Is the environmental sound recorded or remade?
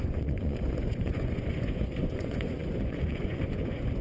remade